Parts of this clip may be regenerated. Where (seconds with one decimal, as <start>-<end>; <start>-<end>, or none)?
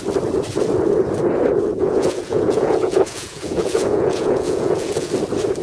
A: 1.7-5.1